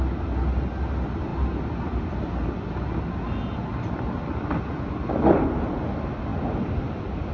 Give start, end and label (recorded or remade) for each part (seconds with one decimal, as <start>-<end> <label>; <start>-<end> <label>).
0.0-7.3 recorded